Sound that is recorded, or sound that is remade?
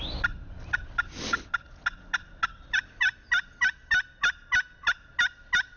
recorded